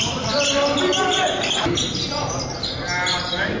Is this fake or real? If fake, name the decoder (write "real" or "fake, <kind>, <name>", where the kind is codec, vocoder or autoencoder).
real